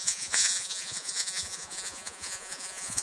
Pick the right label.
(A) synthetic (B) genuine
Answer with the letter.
A